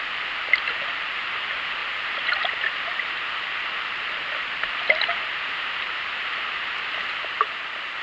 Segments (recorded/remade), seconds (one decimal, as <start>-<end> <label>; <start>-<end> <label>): 0.0-1.8 recorded; 1.8-2.4 remade; 2.4-5.1 recorded; 5.1-8.0 remade